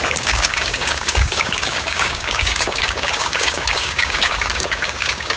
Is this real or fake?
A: fake